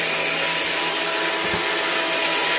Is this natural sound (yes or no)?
yes